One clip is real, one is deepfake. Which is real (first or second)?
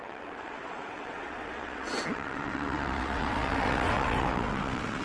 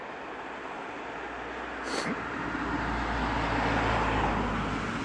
second